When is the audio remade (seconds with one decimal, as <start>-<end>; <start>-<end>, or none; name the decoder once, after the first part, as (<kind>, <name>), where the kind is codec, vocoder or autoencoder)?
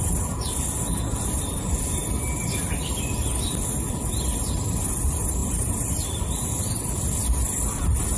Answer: 5.4-5.9 (vocoder, BigVGAN v2)